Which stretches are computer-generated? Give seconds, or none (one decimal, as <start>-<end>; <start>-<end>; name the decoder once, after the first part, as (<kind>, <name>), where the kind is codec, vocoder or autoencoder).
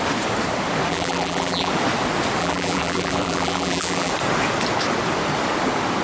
0.9-1.7 (vocoder, BigVGAN v2); 2.4-4.1